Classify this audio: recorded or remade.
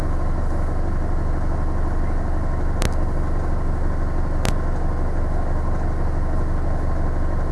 recorded